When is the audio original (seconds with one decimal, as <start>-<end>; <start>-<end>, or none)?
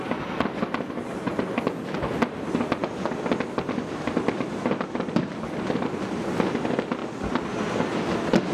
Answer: 0.0-8.5